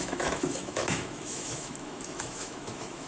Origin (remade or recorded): remade